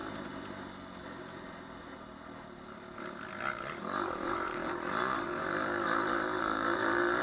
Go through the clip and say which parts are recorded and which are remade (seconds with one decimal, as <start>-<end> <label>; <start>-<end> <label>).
0.0-3.8 recorded; 3.8-7.2 remade